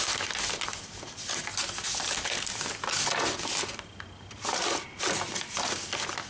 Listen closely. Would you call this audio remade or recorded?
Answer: recorded